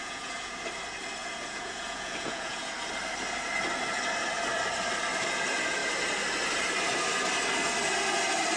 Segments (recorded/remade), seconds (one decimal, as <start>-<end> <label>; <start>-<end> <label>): 0.0-0.6 remade; 0.6-1.2 recorded; 1.2-2.7 remade; 2.7-8.6 recorded